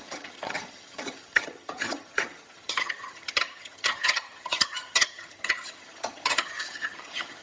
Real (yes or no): no